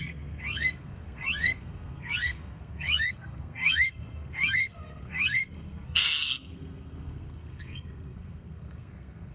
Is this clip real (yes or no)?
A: no